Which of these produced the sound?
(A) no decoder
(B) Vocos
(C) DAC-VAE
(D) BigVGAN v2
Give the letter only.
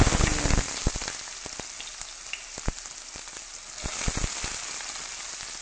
A